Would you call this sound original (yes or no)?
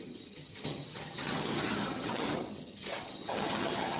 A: no